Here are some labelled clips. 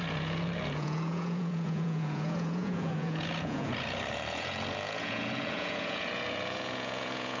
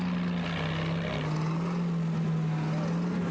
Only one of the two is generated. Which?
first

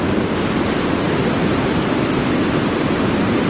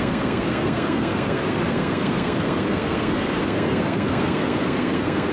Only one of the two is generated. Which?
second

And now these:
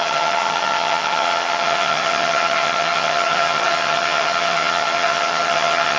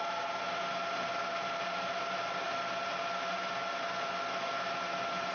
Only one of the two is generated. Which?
first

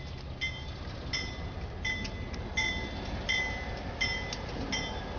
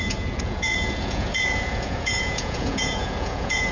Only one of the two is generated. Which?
second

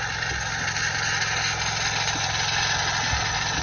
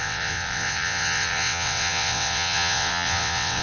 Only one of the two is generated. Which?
second